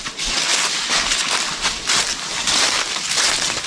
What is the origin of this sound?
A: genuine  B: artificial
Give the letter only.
A